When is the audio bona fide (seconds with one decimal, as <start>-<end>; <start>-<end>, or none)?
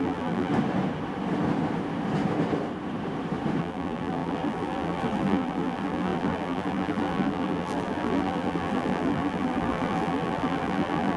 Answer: 0.5-3.6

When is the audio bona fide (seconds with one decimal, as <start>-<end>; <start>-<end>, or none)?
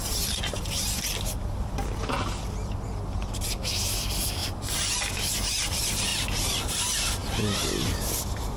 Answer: 0.0-8.6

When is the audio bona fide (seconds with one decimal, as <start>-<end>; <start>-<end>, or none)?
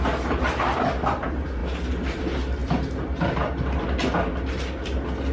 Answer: 0.0-5.3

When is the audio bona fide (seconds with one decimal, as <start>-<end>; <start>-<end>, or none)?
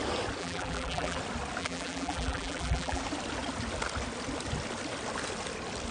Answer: 0.0-0.4; 1.2-1.6; 3.0-5.9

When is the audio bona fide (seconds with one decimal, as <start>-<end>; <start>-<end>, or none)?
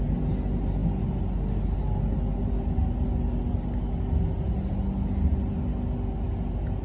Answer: 0.0-6.8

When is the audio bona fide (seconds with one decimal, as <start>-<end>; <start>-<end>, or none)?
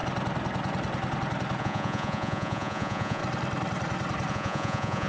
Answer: 0.0-1.6; 3.2-4.3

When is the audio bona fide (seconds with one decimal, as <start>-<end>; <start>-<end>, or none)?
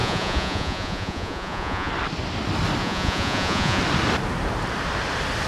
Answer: 1.9-2.8; 3.8-5.5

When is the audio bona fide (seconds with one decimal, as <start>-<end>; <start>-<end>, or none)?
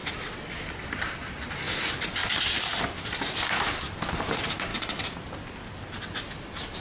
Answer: 0.0-0.5; 1.2-1.8; 4.7-6.0